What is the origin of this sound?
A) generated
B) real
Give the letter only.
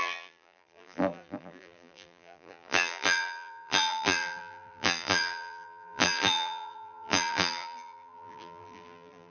A